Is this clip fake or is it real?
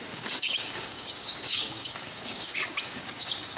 fake